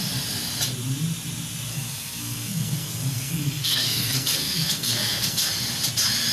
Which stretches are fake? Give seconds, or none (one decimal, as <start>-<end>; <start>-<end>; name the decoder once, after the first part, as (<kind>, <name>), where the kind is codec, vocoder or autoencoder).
1.7-5.5 (codec, SNAC)